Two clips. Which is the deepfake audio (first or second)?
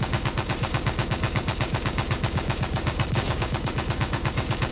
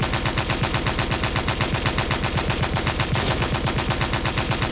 first